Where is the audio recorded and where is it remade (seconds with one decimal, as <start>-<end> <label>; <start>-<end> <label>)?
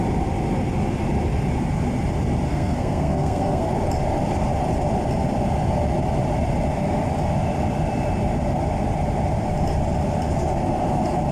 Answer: 0.0-2.5 recorded; 2.5-3.7 remade; 3.7-11.3 recorded